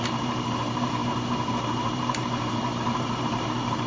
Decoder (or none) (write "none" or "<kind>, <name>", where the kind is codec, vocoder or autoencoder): vocoder, BigVGAN v2